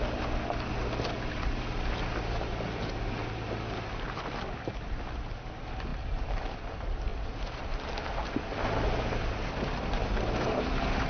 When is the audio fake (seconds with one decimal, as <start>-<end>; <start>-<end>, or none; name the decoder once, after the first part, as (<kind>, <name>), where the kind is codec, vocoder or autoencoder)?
none